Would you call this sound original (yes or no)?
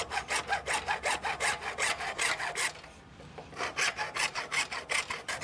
yes